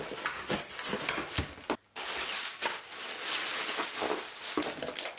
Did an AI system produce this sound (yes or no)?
no